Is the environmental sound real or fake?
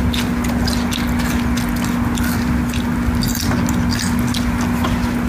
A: real